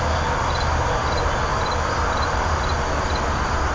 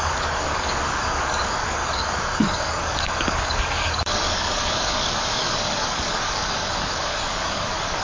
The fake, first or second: second